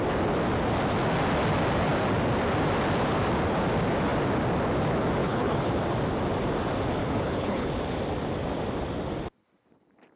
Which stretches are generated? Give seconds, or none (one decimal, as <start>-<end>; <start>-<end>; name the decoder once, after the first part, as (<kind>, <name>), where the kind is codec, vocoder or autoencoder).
5.2-5.7 (codec, HILCodec); 7.0-7.7